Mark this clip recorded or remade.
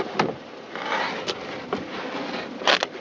recorded